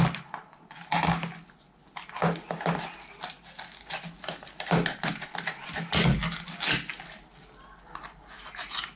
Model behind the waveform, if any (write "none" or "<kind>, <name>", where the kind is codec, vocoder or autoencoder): none